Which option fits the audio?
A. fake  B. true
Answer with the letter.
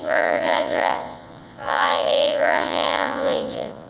A